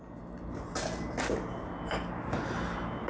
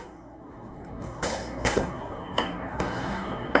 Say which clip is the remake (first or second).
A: second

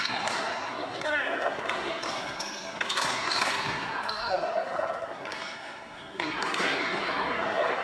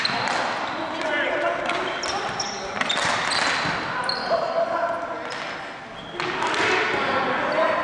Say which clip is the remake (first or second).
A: first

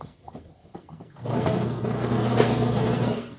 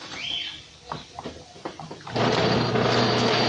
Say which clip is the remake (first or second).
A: first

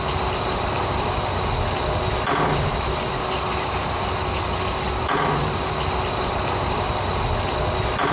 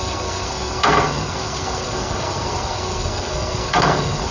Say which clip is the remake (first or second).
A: second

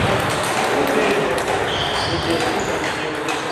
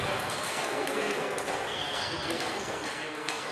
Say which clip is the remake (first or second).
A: second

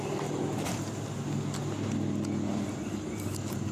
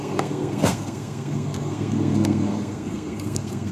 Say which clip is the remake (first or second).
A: second